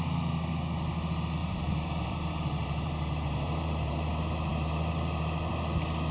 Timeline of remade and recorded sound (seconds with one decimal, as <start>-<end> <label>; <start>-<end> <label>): 0.0-1.4 recorded; 1.4-4.1 remade; 4.1-6.1 recorded